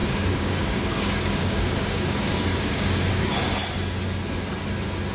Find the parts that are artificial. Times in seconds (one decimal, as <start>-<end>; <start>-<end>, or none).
0.0-3.1